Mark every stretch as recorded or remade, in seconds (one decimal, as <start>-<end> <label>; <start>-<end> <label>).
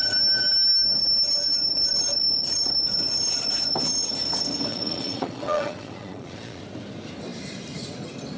0.0-4.7 recorded; 4.7-6.6 remade; 6.6-8.4 recorded